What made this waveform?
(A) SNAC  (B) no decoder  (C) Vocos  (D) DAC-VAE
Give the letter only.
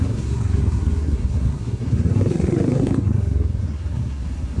A